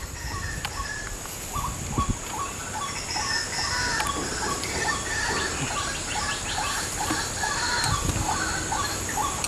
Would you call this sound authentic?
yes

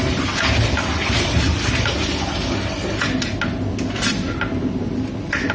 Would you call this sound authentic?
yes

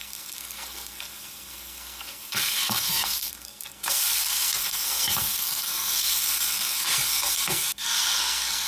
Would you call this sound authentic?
no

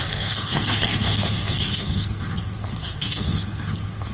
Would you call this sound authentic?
no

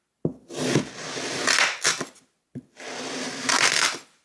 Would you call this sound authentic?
yes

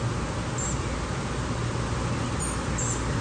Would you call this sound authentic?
yes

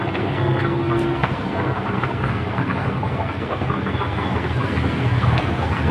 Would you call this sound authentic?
no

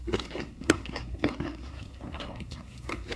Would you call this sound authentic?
no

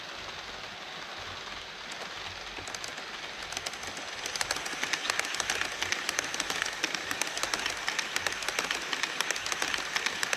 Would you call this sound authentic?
yes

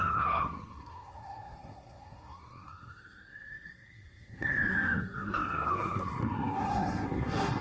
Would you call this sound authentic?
no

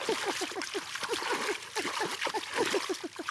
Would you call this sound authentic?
yes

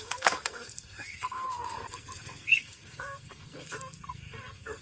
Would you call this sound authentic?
no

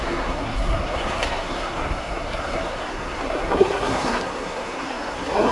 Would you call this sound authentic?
no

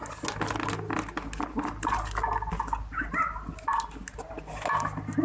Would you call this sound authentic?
yes